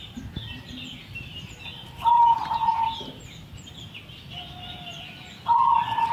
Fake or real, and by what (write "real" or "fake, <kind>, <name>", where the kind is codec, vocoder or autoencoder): fake, vocoder, BigVGAN v2